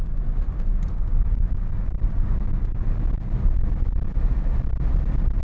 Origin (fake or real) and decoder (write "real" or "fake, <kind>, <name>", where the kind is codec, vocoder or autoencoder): real